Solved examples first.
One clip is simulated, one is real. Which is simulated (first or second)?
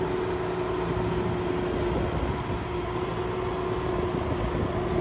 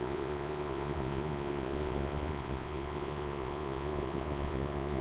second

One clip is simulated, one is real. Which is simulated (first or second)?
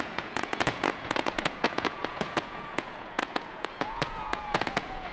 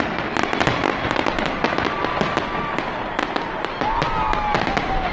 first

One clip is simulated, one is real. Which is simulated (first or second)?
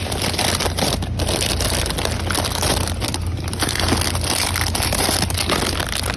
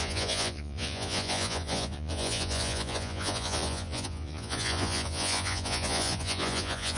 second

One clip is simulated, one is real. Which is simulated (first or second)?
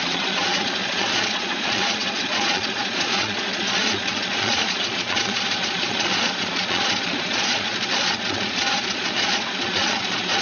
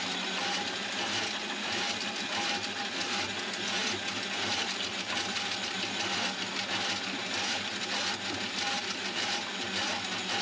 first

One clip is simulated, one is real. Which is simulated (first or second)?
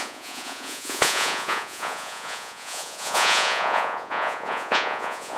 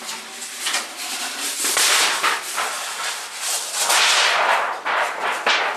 first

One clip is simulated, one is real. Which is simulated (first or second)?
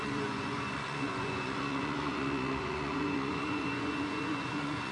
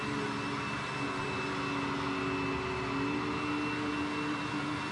first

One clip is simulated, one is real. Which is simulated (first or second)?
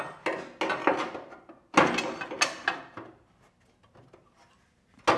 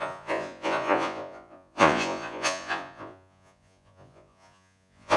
second